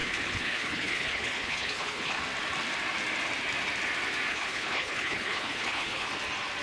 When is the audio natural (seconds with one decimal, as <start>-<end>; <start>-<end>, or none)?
2.2-4.3; 6.1-6.6